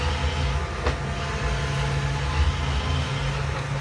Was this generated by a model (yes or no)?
no